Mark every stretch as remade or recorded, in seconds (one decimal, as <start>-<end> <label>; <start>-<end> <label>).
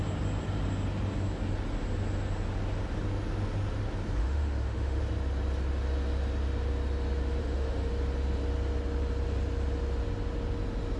0.0-4.2 recorded; 4.2-5.0 remade; 5.0-7.4 recorded; 7.4-7.9 remade; 7.9-11.0 recorded